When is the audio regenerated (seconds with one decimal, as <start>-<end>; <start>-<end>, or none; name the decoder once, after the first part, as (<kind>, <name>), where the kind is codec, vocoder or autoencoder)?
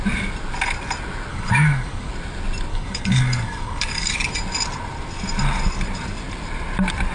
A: 1.3-2.1 (codec, DAC); 2.7-4.3